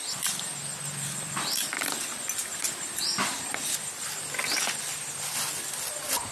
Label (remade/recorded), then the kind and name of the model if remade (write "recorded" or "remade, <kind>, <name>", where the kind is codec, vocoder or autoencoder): recorded